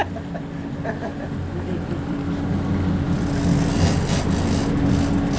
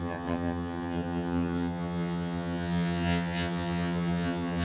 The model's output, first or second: second